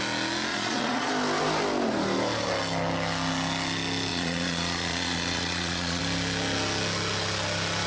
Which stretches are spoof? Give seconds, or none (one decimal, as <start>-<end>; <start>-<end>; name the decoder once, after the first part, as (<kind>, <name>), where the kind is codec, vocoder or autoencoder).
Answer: 0.5-1.1 (vocoder, Vocos); 4.1-6.0